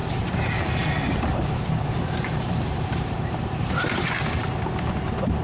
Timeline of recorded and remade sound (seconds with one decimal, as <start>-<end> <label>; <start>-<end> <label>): 0.0-0.7 remade; 0.7-1.3 recorded; 1.3-4.5 remade; 4.5-5.4 recorded